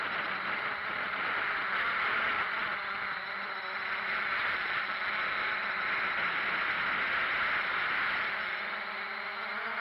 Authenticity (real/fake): real